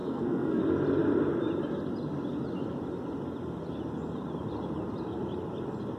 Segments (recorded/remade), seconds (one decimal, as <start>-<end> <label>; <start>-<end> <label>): 0.0-0.6 remade; 0.6-6.0 recorded